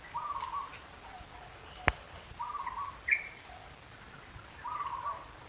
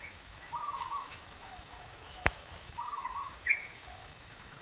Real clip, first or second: first